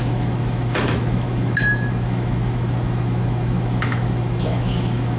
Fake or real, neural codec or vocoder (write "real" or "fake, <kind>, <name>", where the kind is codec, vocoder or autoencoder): fake, autoencoder, DAC-VAE